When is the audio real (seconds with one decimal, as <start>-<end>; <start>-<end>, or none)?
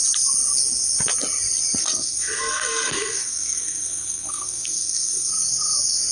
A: 0.0-1.8; 5.3-6.1